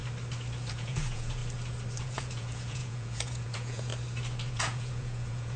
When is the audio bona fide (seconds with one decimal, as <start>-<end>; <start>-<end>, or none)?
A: 0.0-0.7; 1.4-2.0; 3.9-4.5